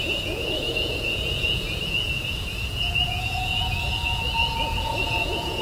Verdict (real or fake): fake